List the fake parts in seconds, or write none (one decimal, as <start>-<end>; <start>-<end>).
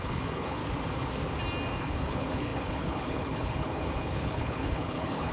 0.0-0.6; 1.8-5.3